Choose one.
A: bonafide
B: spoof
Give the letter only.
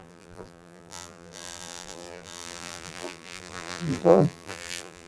B